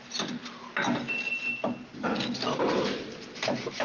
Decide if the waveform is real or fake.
real